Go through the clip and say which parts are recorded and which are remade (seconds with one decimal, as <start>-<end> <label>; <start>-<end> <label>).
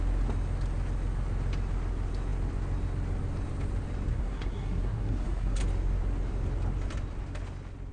0.0-4.1 recorded; 4.1-5.6 remade; 5.6-7.9 recorded